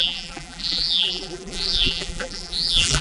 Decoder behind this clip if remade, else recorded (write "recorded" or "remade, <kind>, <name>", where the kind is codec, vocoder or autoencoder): remade, vocoder, BigVGAN v2